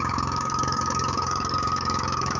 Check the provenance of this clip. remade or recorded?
remade